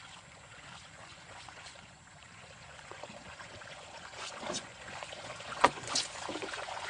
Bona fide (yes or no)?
no